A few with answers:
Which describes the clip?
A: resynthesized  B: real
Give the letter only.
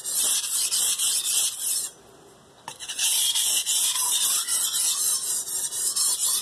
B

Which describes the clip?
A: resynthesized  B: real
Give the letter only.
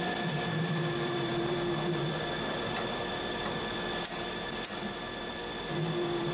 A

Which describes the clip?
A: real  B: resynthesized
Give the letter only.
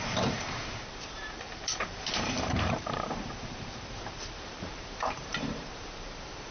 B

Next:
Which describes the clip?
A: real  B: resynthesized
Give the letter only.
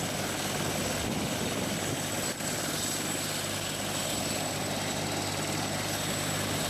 A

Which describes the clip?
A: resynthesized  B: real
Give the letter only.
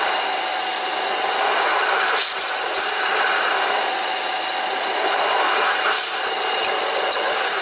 B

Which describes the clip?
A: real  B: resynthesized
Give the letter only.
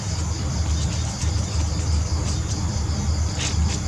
A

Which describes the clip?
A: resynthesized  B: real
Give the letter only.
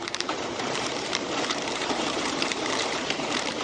A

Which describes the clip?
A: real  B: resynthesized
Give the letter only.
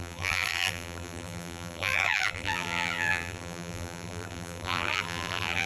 B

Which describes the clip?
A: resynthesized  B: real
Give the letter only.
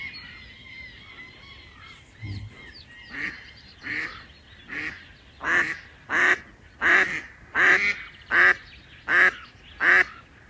B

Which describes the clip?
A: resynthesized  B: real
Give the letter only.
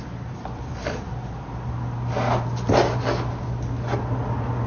B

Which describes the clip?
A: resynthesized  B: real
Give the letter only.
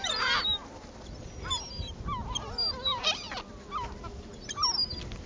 B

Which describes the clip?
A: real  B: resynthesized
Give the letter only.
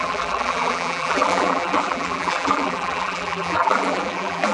B